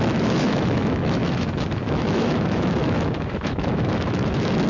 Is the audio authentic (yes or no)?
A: no